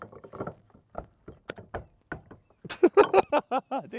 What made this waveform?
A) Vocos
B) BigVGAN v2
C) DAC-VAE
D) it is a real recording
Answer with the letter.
D